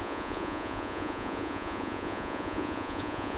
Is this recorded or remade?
remade